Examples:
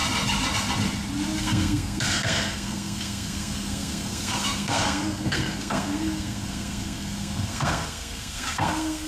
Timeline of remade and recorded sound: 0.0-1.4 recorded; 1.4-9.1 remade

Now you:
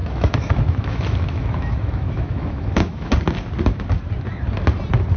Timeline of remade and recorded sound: 0.0-3.1 remade; 3.1-5.2 recorded

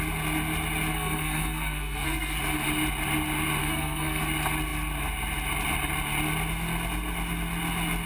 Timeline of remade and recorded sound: 0.0-0.9 recorded; 0.9-2.4 remade; 2.4-3.6 recorded; 3.6-4.2 remade; 4.2-8.1 recorded

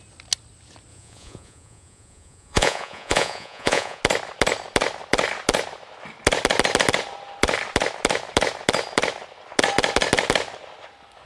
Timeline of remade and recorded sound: 0.0-0.9 recorded; 0.9-4.0 remade; 4.0-11.3 recorded

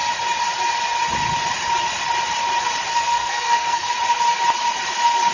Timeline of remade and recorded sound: 0.0-2.9 recorded; 2.9-3.9 remade; 3.9-5.3 recorded

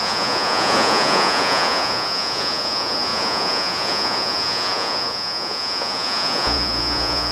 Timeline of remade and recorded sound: 0.0-7.3 remade

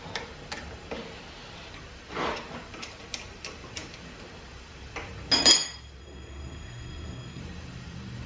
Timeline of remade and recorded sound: 0.0-6.0 recorded; 6.0-7.4 remade; 7.4-8.3 recorded